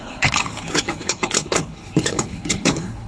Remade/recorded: remade